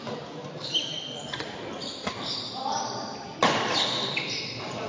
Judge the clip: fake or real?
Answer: real